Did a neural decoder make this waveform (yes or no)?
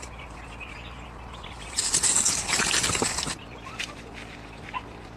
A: no